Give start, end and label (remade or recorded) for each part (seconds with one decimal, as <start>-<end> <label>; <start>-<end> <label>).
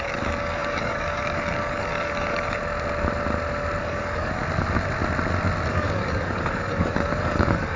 0.0-2.6 remade; 2.6-3.8 recorded; 3.8-4.4 remade; 4.4-5.7 recorded; 5.7-7.8 remade